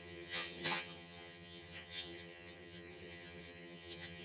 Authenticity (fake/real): fake